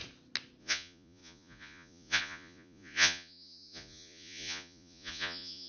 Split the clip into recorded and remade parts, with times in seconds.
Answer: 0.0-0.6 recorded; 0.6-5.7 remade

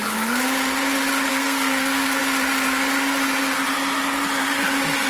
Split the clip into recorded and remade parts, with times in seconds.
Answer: 0.0-1.3 recorded; 1.3-2.2 remade; 2.2-5.1 recorded

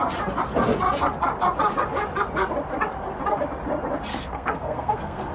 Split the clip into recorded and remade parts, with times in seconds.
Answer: 0.0-4.1 recorded; 4.1-5.3 remade

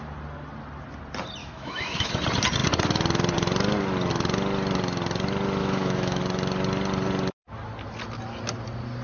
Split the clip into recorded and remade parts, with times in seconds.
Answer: 0.0-1.4 recorded; 1.4-2.1 remade; 2.1-5.6 recorded; 5.6-6.2 remade; 6.2-9.0 recorded

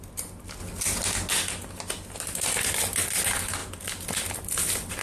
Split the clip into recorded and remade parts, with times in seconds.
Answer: 0.0-5.0 recorded

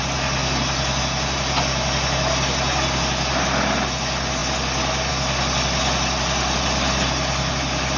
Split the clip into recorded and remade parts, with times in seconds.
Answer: 0.0-8.0 recorded

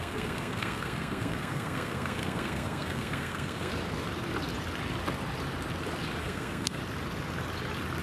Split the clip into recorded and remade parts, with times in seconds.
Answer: 0.0-3.7 remade; 3.7-6.2 recorded; 6.2-6.8 remade; 6.8-8.0 recorded